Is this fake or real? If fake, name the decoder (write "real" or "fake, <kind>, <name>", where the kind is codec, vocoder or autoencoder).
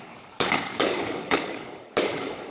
fake, codec, DAC